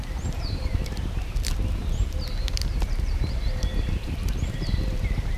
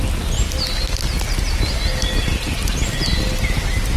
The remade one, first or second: first